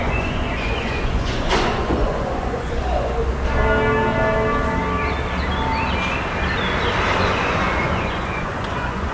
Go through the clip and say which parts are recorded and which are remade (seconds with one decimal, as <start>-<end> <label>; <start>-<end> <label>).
0.0-3.2 remade; 3.2-7.2 recorded; 7.2-9.1 remade